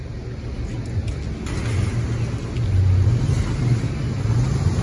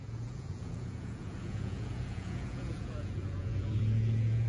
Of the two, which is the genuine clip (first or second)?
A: first